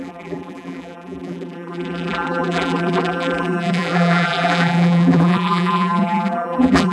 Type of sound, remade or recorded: remade